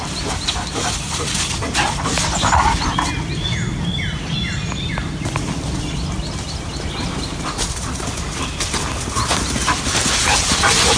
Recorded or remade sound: recorded